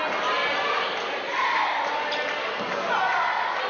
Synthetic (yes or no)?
no